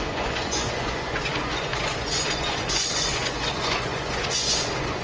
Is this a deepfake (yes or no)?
yes